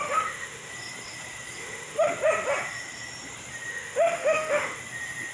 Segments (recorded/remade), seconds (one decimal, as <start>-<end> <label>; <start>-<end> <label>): 0.0-0.7 remade; 0.7-1.6 recorded; 1.6-2.1 remade; 2.1-3.7 recorded; 3.7-4.8 remade; 4.8-5.3 recorded